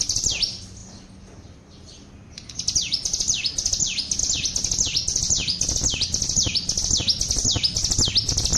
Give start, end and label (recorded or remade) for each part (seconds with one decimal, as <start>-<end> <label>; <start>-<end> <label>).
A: 0.0-8.6 recorded